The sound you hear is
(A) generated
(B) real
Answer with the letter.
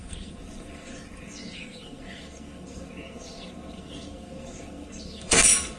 A